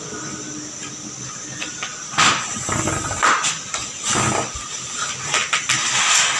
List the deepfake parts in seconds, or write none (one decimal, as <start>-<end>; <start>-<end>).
none